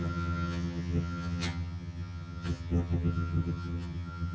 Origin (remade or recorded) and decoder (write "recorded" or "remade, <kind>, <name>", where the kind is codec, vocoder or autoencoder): remade, vocoder, HiFi-GAN